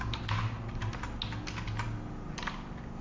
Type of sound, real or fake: real